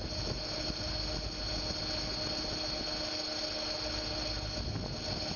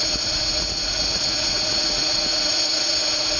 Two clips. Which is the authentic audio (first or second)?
first